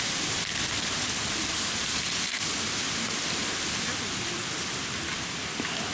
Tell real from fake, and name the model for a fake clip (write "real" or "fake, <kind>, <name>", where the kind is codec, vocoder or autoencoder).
real